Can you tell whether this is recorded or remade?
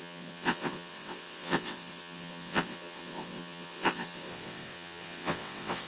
remade